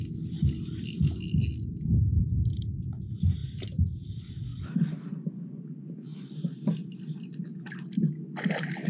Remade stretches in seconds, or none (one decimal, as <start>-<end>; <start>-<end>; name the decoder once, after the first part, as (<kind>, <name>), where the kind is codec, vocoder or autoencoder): 3.4-4.1 (vocoder, BigVGAN v2); 6.1-7.0